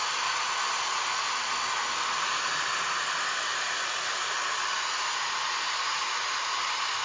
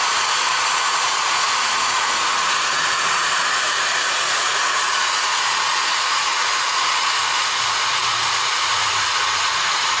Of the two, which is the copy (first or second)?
second